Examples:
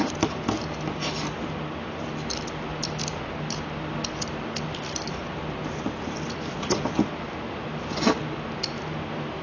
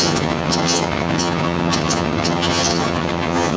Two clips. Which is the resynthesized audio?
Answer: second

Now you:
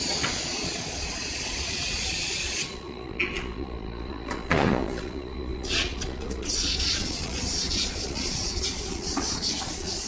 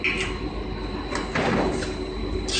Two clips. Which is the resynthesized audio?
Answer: first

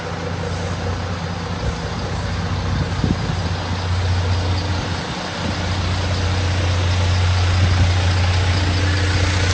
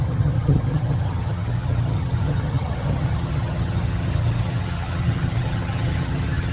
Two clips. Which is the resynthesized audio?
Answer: second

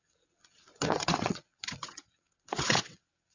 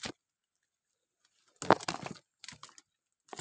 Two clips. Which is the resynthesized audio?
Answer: first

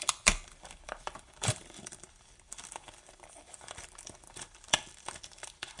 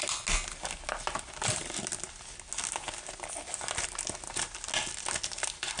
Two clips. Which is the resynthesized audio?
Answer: first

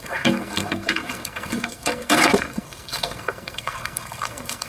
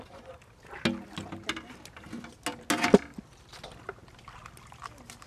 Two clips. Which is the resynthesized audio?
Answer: first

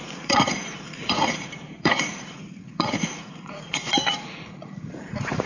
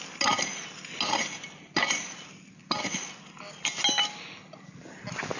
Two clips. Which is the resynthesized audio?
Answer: first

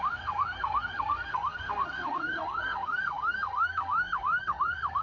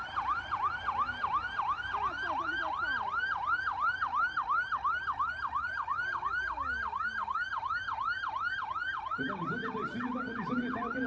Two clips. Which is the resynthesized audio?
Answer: first